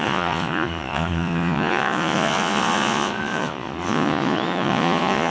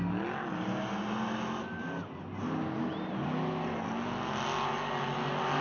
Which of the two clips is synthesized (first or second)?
first